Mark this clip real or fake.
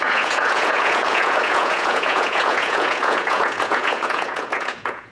fake